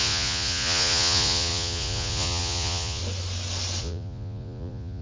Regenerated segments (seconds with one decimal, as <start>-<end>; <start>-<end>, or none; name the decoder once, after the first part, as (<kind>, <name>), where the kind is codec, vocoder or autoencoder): 0.0-3.0 (vocoder, Vocos); 3.8-5.0